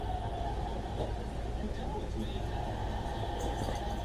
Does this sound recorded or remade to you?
recorded